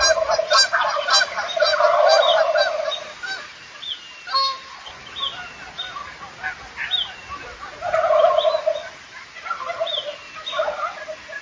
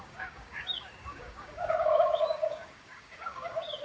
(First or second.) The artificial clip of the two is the second